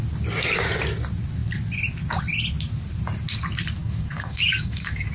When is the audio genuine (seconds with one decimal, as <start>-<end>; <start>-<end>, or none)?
0.0-3.8